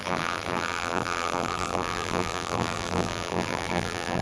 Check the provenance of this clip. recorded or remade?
remade